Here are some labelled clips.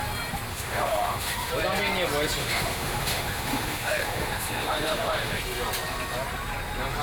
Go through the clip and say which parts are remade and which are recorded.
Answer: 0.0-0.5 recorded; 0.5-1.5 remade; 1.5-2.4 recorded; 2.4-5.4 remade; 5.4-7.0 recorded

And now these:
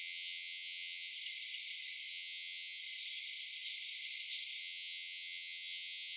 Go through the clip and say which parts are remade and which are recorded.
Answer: 0.0-1.1 remade; 1.1-2.1 recorded; 2.1-2.8 remade; 2.8-4.6 recorded; 4.6-6.2 remade

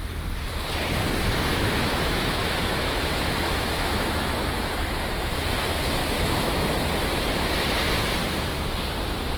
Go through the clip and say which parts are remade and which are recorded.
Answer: 0.0-1.5 recorded; 1.5-5.3 remade; 5.3-6.0 recorded; 6.0-6.7 remade; 6.7-9.4 recorded

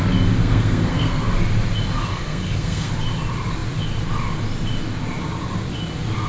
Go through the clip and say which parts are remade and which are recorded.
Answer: 0.0-0.4 recorded; 0.4-1.3 remade; 1.3-2.1 recorded; 2.1-2.9 remade; 2.9-6.3 recorded

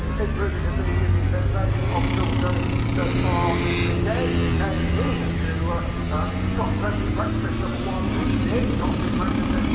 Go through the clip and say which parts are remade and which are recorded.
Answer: 0.0-9.7 recorded

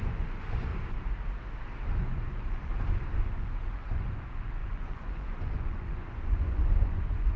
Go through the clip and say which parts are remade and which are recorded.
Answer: 0.0-0.7 remade; 0.7-2.0 recorded; 2.0-2.7 remade; 2.7-3.2 recorded; 3.2-7.4 remade

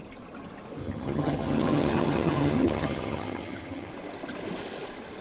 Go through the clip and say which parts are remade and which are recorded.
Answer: 0.0-0.8 recorded; 0.8-3.9 remade; 3.9-5.2 recorded

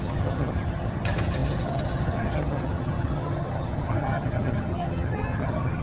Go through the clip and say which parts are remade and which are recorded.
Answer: 0.0-5.8 remade